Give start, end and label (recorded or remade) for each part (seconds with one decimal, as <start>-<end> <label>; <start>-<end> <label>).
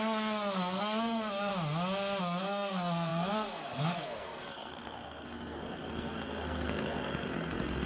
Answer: 0.0-1.5 remade; 1.5-2.2 recorded; 2.2-7.8 remade